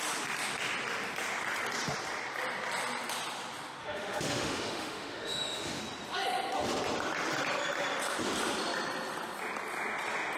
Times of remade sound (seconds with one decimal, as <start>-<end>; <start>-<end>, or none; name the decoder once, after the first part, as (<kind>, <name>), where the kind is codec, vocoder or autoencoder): 3.8-5.8 (autoencoder, DAC-VAE)